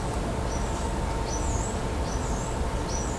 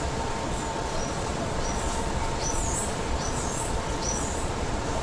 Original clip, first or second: first